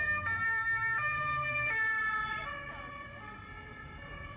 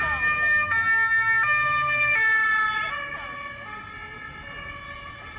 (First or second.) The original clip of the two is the second